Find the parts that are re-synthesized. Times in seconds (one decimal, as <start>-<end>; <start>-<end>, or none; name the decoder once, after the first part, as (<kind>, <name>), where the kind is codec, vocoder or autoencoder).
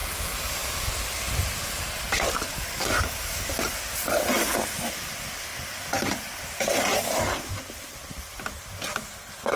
0.0-0.9 (codec, DAC); 2.5-3.7